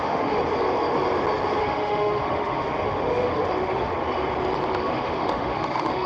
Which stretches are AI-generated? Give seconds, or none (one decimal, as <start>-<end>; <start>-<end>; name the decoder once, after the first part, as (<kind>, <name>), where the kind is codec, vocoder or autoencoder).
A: 0.0-0.4 (autoencoder, DAC-VAE); 1.6-3.9; 4.8-6.1

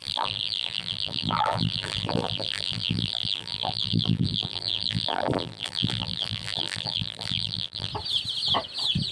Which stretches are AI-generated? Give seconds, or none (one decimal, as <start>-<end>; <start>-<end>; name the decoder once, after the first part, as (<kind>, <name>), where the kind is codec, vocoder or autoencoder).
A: 0.0-7.9 (vocoder, BigVGAN v2)

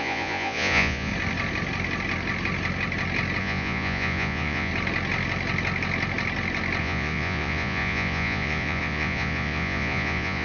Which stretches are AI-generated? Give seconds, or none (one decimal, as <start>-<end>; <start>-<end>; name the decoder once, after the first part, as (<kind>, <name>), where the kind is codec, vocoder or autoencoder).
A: 0.0-1.1 (vocoder, Vocos); 3.4-4.7; 6.8-10.4

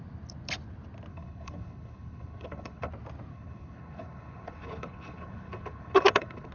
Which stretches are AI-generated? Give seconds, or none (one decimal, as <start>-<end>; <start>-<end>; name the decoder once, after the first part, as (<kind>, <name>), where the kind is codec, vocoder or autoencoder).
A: 1.1-2.9 (codec, HILCodec); 3.3-6.5

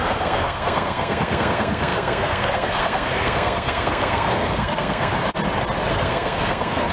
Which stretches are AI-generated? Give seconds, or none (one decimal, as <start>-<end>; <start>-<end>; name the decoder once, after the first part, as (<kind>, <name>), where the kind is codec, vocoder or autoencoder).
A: 0.0-5.1 (codec, SNAC); 5.9-6.9

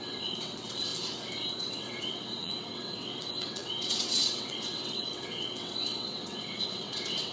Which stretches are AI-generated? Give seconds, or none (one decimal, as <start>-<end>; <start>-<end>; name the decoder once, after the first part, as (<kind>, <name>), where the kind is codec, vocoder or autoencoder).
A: 0.0-0.9 (vocoder, WaveNeXt); 1.5-7.3

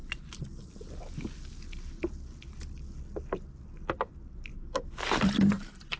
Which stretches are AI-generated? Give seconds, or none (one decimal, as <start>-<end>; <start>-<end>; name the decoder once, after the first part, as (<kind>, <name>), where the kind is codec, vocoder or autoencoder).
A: none